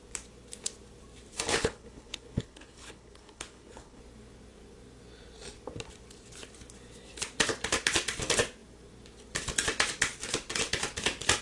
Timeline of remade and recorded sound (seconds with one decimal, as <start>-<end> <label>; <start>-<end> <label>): 0.0-1.5 recorded; 1.5-4.0 remade; 4.0-11.4 recorded